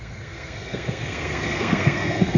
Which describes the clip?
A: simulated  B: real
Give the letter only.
A